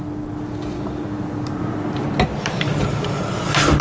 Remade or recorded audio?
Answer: recorded